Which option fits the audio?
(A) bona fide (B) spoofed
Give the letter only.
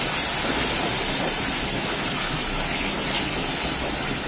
A